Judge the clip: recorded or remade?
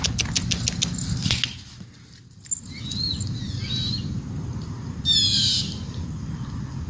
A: recorded